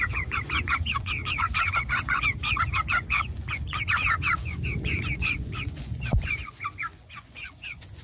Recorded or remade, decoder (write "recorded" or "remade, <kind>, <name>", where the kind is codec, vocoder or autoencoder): remade, vocoder, Vocos